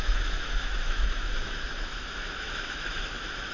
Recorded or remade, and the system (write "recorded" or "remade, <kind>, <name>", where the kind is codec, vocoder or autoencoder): remade, autoencoder, DAC-VAE